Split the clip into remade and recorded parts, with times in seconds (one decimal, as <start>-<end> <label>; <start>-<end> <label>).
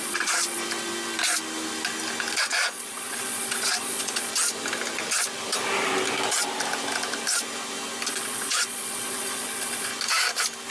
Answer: 0.0-0.6 remade; 0.6-2.4 recorded; 2.4-4.3 remade; 4.3-8.1 recorded; 8.1-9.9 remade; 9.9-10.7 recorded